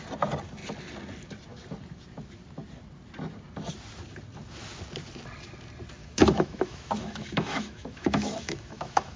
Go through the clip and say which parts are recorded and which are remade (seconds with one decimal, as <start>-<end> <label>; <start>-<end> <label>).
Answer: 0.0-6.0 recorded; 6.0-9.2 remade